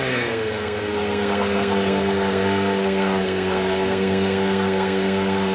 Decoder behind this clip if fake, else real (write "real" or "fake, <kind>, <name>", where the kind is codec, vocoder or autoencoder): fake, codec, SNAC